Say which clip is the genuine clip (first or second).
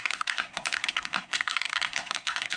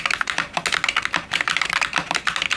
second